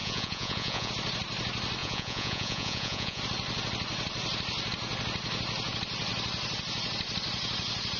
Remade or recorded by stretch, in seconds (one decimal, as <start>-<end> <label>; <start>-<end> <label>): 0.0-0.9 remade; 0.9-1.8 recorded; 1.8-3.2 remade; 3.2-8.0 recorded